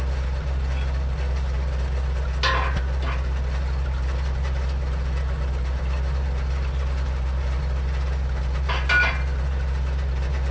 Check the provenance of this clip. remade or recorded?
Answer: recorded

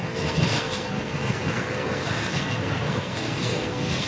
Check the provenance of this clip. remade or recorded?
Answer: remade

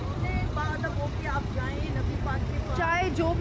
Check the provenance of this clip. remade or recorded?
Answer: recorded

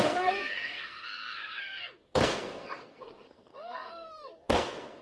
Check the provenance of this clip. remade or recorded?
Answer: remade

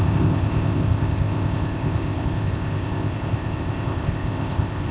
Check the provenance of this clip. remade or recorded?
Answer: remade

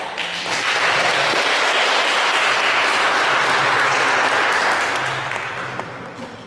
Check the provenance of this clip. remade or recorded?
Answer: recorded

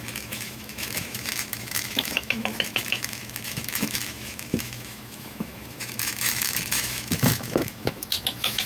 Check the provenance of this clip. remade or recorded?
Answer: remade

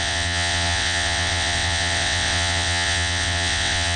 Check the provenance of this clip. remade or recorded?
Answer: remade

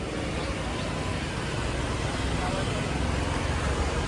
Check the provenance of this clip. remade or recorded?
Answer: recorded